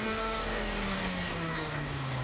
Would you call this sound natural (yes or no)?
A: no